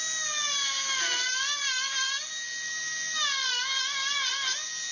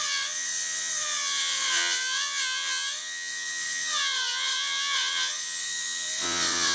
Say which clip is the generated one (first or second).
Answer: second